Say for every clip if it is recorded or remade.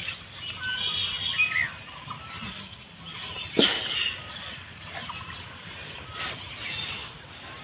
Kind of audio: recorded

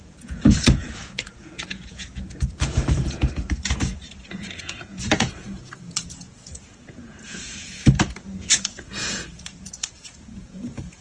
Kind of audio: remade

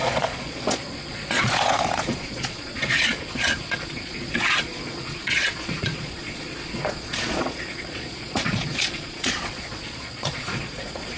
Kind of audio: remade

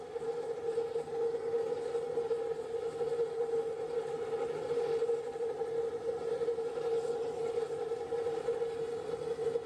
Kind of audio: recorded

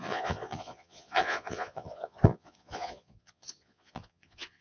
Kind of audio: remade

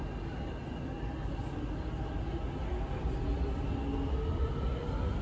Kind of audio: recorded